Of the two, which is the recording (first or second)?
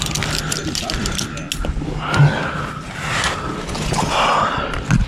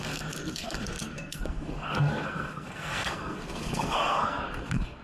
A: first